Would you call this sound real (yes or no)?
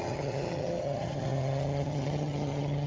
no